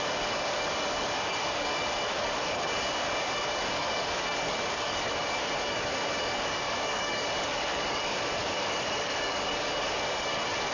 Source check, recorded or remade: remade